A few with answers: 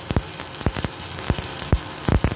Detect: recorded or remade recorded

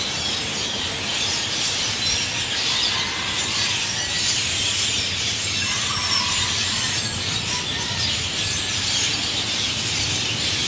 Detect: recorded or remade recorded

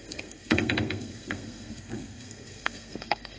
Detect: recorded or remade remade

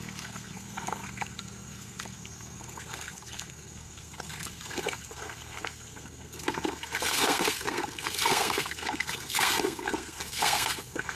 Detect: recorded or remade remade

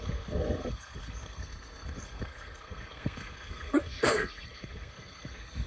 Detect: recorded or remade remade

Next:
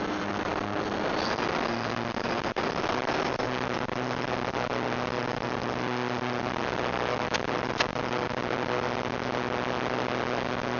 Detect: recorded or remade recorded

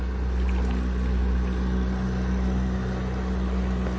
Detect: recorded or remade recorded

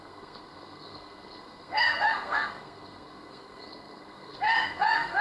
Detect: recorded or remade remade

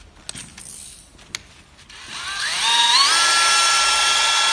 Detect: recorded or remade recorded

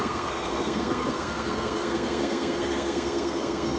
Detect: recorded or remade remade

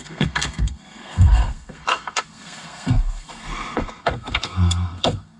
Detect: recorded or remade remade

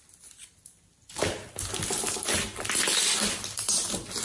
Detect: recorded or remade recorded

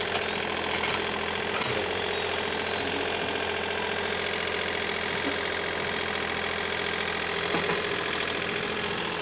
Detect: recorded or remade recorded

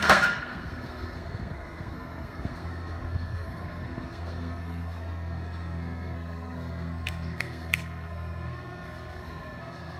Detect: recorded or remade remade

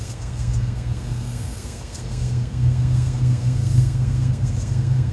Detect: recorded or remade remade